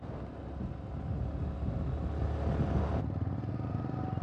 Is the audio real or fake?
real